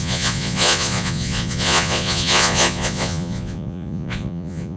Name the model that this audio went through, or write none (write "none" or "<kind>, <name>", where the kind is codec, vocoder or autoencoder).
vocoder, Vocos